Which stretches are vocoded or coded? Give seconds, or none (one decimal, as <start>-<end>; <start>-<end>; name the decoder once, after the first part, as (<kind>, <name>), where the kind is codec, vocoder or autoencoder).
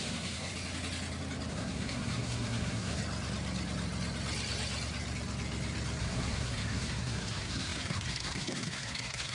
0.0-0.5 (codec, SNAC); 1.5-3.0; 6.0-9.3